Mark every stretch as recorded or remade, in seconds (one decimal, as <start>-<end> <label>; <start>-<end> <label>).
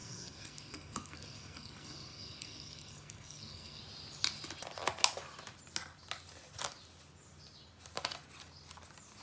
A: 0.0-3.8 remade; 3.8-9.2 recorded